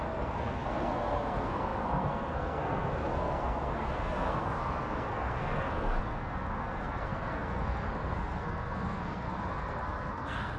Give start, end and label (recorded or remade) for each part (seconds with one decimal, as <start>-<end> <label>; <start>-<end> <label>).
0.0-10.6 remade